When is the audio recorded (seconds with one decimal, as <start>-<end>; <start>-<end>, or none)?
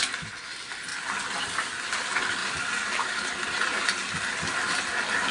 0.0-5.3